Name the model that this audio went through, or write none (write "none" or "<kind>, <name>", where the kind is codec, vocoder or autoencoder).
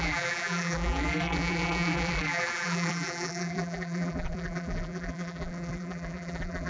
vocoder, BigVGAN v2